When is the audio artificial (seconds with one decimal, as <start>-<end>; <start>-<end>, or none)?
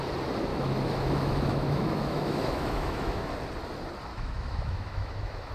0.5-3.3; 4.1-5.5